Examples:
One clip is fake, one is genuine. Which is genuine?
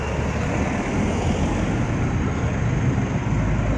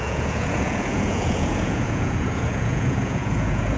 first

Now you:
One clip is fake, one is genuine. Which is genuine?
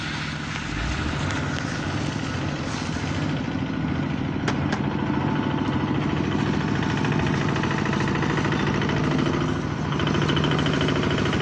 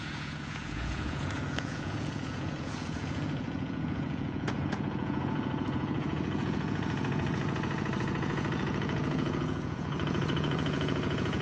first